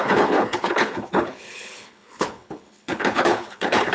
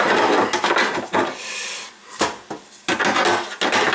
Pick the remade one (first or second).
first